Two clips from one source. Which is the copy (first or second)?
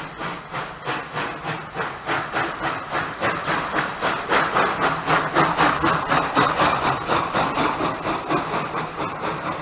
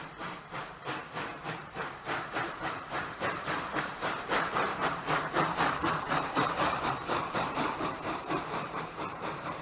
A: second